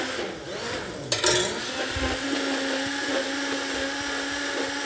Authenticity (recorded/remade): recorded